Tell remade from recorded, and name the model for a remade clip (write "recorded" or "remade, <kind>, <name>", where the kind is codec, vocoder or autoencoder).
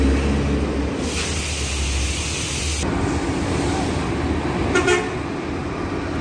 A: recorded